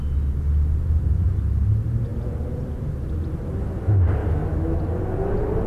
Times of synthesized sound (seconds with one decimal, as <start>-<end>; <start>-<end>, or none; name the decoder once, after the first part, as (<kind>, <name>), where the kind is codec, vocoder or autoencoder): 4.2-4.8 (autoencoder, DAC-VAE)